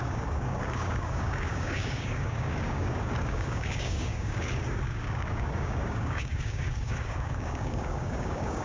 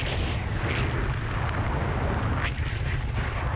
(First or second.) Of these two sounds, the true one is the second